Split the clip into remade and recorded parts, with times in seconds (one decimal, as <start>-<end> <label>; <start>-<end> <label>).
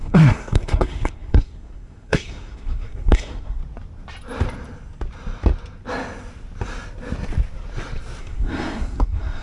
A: 0.0-3.6 remade; 3.6-8.2 recorded; 8.2-9.4 remade